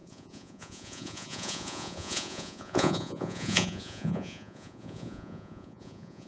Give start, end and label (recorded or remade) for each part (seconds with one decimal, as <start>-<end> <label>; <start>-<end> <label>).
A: 0.0-6.3 remade